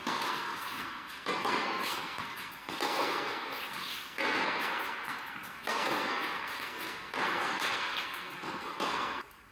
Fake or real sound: fake